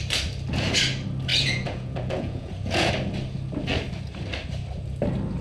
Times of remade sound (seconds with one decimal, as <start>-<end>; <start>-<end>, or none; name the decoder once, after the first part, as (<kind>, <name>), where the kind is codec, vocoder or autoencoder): 1.3-2.9 (vocoder, Vocos)